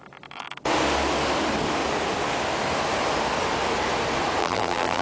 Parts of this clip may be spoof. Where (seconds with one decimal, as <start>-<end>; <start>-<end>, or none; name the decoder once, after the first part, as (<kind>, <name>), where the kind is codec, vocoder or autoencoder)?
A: 4.4-5.0 (vocoder, BigVGAN v2)